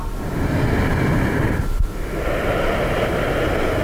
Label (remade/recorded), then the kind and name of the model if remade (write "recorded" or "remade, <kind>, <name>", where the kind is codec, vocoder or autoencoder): recorded